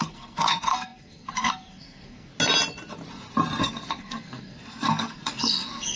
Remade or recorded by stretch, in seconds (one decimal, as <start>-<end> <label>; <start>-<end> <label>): 0.0-2.3 remade; 2.3-3.6 recorded; 3.6-6.0 remade